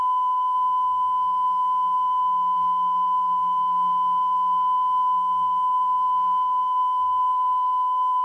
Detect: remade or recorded remade